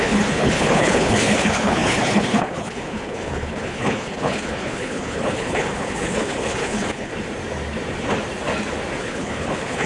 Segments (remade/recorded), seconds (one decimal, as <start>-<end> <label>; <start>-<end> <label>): 0.0-7.1 remade; 7.1-9.0 recorded; 9.0-9.9 remade